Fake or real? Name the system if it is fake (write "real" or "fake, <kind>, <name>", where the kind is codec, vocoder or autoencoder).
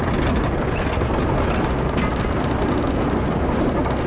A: real